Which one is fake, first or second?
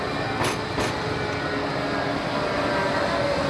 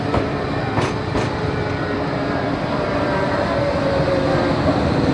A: second